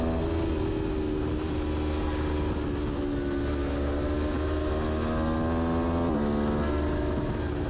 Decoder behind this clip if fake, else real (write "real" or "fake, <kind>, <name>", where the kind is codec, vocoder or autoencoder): real